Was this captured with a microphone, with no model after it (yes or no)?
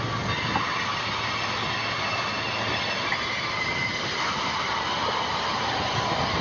yes